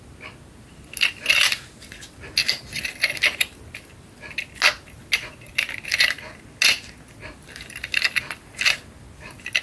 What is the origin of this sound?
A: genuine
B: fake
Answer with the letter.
A